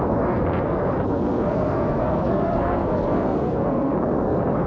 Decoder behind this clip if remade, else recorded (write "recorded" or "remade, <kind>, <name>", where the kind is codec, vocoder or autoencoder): remade, codec, SNAC